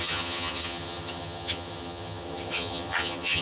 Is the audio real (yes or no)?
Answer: no